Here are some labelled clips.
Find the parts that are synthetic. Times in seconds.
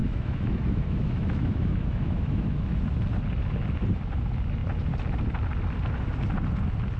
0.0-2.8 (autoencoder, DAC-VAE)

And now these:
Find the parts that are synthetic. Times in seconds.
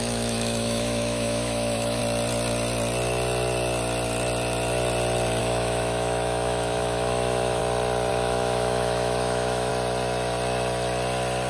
0.0-2.0 (autoencoder, DAC-VAE); 5.4-7.6; 8.1-9.7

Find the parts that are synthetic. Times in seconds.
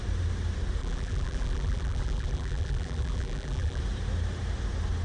0.8-3.8 (vocoder, BigVGAN v2)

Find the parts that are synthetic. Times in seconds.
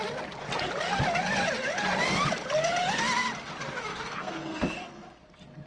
3.9-4.6 (codec, SNAC)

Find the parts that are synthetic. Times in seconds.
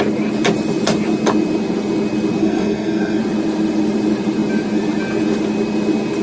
2.4-3.2 (codec, SNAC)